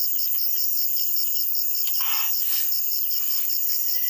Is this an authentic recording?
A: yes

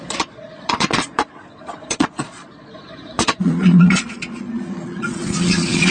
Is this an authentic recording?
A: no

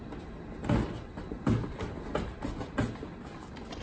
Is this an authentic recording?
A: yes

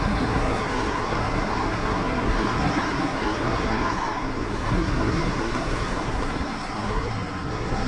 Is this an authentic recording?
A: no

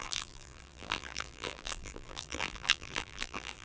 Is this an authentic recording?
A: no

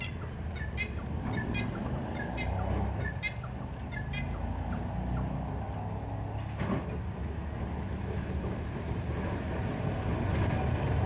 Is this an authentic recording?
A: yes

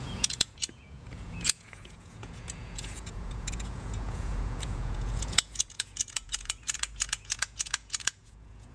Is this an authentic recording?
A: no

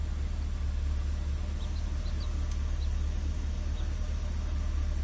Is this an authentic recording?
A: yes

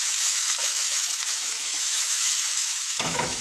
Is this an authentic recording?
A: no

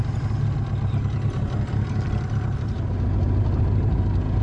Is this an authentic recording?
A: yes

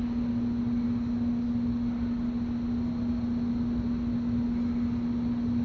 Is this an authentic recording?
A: yes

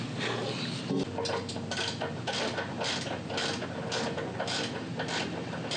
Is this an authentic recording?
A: yes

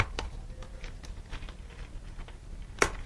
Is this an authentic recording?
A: yes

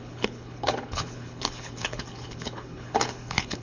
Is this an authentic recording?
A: no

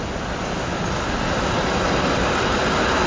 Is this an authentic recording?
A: yes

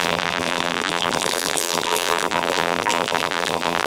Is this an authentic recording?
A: no